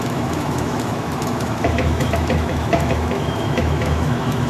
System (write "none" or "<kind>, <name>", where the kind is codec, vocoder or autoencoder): autoencoder, DAC-VAE